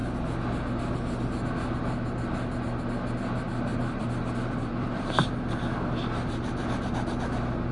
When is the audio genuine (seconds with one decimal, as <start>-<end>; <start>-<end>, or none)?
0.0-3.7; 5.4-7.7